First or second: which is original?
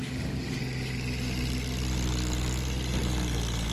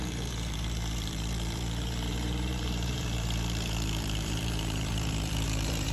first